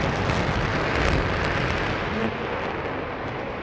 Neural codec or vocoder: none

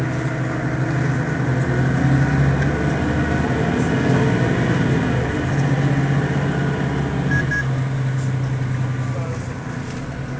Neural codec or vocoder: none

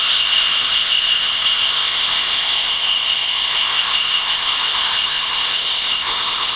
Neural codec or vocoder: codec, ZipCodec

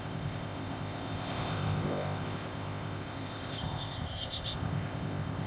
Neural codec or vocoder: codec, ZipCodec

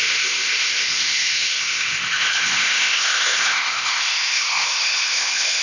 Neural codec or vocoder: codec, ZipCodec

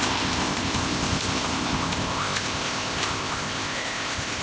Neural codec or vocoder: codec, ZipCodec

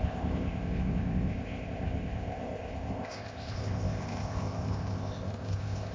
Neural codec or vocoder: codec, ZipCodec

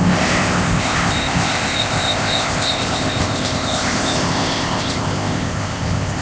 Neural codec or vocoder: codec, ZipCodec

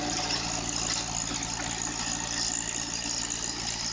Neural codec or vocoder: none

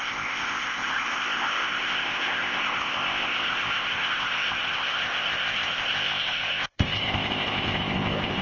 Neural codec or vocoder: codec, ZipCodec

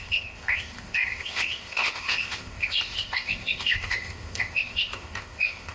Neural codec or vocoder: codec, ZipCodec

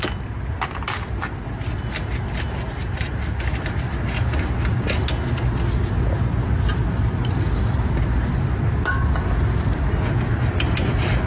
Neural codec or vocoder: none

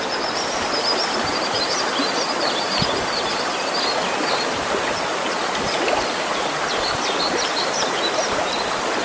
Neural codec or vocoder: none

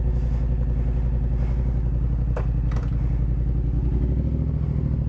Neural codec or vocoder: none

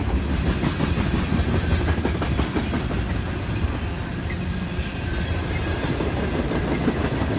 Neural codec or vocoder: none